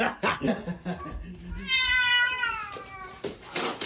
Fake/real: real